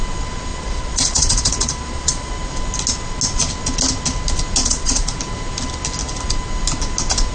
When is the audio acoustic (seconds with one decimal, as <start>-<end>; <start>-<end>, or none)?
0.0-0.5; 2.3-4.6; 5.2-7.3